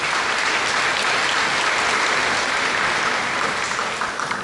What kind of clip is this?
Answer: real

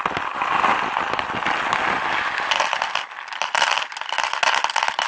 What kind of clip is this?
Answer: real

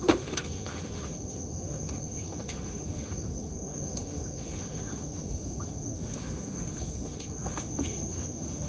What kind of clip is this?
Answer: fake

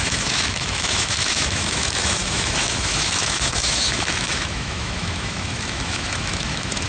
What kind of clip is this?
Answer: fake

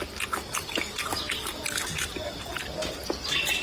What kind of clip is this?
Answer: real